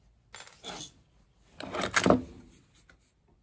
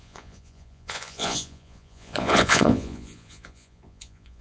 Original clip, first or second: first